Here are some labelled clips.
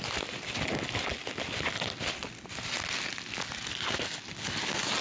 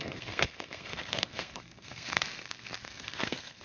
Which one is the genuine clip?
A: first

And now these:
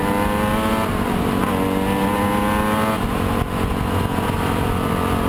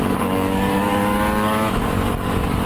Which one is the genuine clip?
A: first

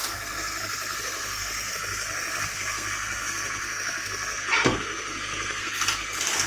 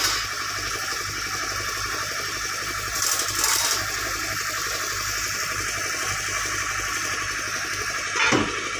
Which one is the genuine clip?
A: second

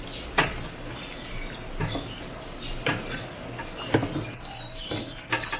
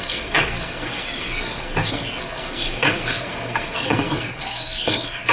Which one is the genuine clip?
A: first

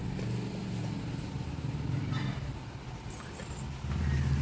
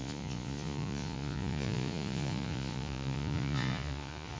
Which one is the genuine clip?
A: first